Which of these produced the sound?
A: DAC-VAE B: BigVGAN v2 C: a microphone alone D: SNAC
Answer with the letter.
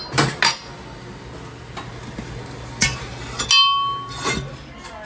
C